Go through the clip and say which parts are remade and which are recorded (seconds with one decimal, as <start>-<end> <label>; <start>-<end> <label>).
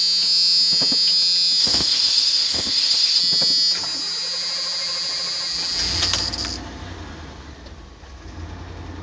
0.0-1.6 recorded; 1.6-3.2 remade; 3.2-9.0 recorded